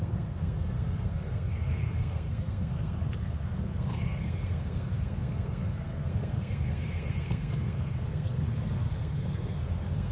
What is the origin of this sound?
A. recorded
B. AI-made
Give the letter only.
B